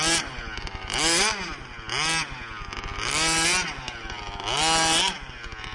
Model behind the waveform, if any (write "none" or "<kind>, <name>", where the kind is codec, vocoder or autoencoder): none